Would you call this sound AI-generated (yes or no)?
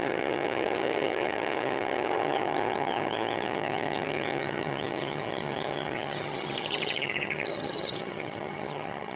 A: yes